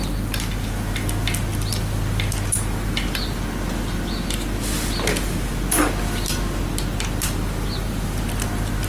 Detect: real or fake real